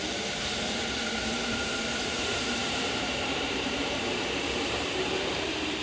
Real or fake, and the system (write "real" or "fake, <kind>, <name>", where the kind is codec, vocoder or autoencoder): fake, vocoder, BigVGAN v2